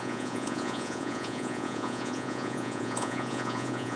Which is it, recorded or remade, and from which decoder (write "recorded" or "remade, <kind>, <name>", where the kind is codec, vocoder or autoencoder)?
remade, vocoder, Vocos